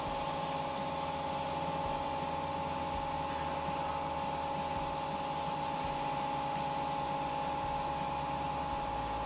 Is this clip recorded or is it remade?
recorded